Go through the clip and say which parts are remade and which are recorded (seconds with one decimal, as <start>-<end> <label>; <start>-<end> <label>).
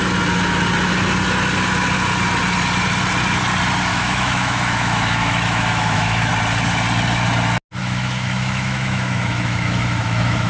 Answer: 0.0-3.9 recorded; 3.9-6.3 remade; 6.3-7.8 recorded; 7.8-10.5 remade